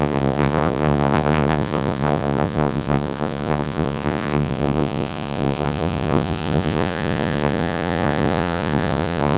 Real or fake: fake